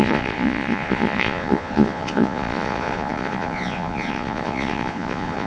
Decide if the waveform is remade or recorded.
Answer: remade